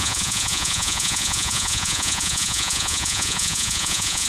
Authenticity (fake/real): fake